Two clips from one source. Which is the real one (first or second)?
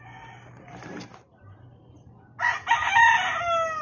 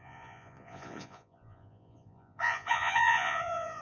first